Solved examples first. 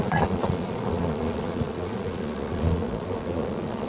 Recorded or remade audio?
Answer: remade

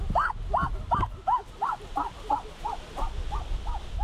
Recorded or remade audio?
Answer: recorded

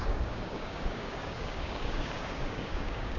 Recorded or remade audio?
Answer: remade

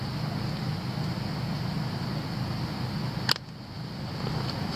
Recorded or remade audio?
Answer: recorded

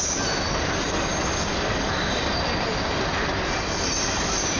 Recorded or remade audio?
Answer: recorded